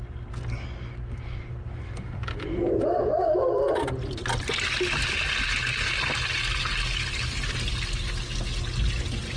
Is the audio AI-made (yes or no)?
no